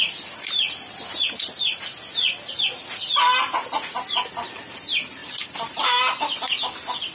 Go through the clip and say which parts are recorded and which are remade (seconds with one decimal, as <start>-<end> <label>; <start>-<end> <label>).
0.0-5.2 recorded; 5.2-6.2 remade; 6.2-7.1 recorded